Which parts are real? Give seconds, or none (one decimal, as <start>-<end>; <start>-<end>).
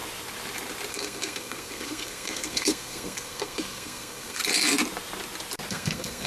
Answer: 0.0-0.9; 4.4-5.7